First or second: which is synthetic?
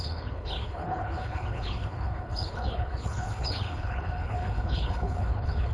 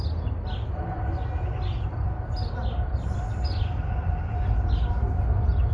first